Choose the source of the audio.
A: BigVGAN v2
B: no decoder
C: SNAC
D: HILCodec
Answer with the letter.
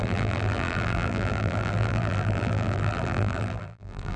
A